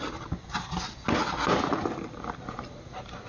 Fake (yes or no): no